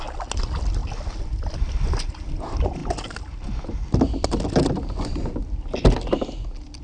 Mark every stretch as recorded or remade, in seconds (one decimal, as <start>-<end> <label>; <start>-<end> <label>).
0.0-6.8 recorded